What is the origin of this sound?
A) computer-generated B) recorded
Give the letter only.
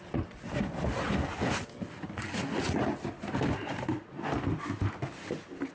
B